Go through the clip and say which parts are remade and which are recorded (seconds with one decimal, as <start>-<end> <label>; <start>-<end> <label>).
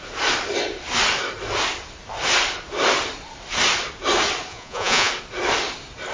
0.0-4.5 recorded; 4.5-5.1 remade; 5.1-6.1 recorded